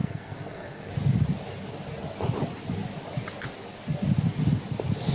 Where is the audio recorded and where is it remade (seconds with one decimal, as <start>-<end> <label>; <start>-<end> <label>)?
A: 0.0-0.9 remade; 0.9-5.1 recorded